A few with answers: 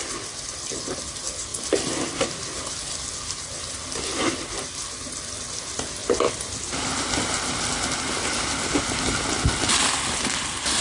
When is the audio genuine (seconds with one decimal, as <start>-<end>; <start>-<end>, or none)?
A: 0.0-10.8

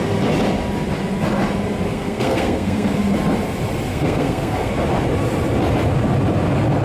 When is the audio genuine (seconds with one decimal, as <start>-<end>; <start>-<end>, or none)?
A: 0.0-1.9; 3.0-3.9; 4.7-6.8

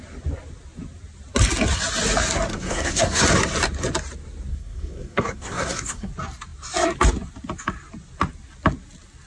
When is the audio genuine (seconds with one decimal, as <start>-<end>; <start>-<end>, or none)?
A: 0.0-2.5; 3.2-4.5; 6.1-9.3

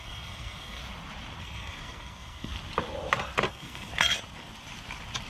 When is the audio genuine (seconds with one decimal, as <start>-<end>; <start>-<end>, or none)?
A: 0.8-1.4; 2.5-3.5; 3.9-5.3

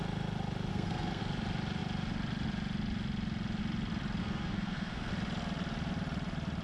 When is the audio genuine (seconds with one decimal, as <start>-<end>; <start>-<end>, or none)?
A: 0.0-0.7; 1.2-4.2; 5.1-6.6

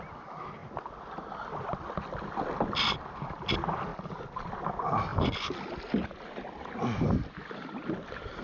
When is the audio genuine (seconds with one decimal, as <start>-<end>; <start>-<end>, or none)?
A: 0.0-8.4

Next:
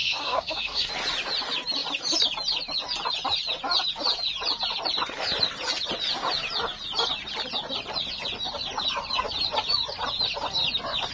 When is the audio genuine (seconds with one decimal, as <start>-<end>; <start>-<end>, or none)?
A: 0.9-11.1